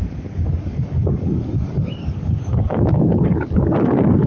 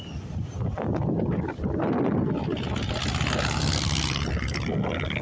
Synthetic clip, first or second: first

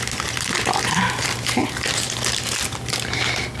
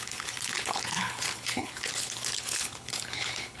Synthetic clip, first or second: second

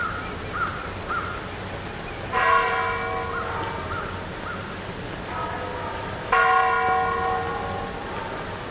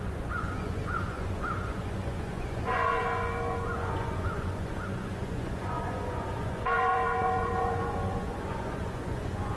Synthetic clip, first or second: second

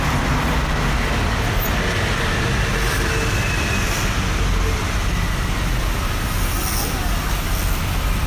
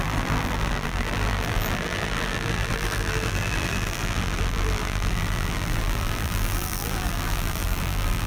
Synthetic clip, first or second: second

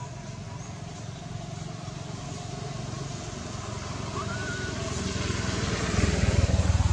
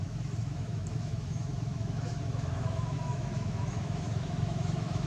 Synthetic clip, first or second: second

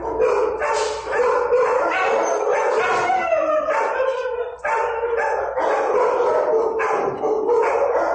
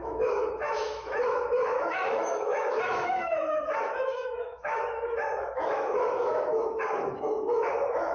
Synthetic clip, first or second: second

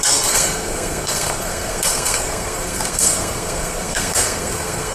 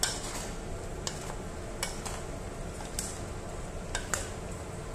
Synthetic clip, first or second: first